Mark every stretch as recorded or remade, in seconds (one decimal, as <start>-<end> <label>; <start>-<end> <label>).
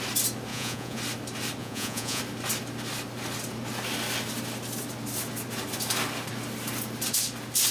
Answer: 0.0-0.5 recorded; 0.5-1.0 remade; 1.0-1.6 recorded; 1.6-2.2 remade; 2.2-7.7 recorded